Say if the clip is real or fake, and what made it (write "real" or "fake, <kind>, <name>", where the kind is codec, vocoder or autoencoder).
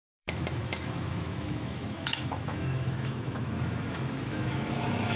fake, autoencoder, DAC-VAE